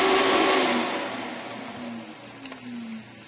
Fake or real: real